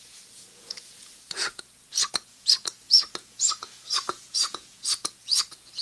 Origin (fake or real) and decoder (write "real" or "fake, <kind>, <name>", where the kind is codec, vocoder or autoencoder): fake, vocoder, Vocos